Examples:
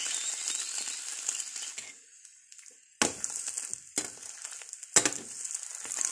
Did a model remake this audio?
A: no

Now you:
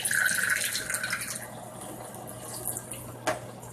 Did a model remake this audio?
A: no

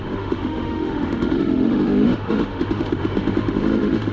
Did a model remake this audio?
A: yes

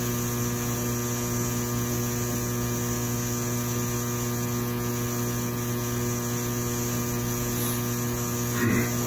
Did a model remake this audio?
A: no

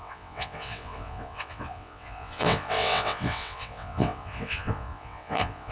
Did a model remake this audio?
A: yes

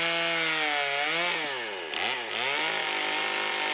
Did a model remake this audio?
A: no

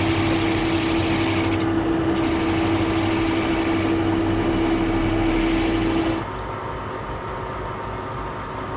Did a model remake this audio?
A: no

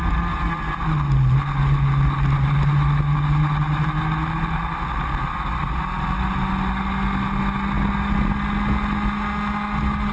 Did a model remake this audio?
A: no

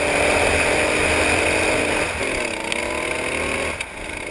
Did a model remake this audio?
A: no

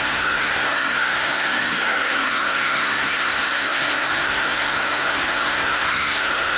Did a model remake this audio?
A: yes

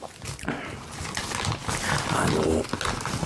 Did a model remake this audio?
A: no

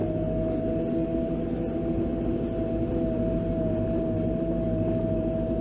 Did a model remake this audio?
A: no